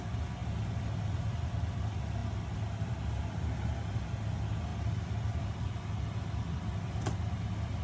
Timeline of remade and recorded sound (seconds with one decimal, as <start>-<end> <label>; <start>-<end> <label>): 0.0-4.7 recorded; 4.7-7.1 remade; 7.1-7.8 recorded